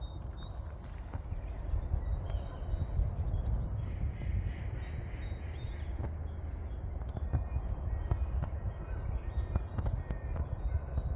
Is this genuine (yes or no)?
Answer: yes